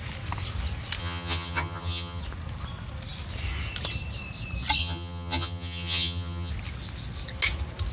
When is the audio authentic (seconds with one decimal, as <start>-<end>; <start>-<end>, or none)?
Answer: 0.0-1.0; 2.2-4.8; 6.5-7.9